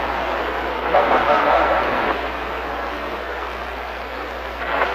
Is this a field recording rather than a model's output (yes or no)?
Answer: no